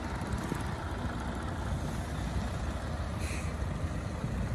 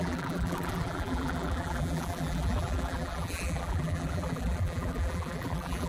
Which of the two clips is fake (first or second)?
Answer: second